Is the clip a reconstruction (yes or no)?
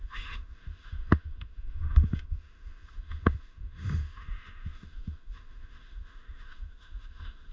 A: yes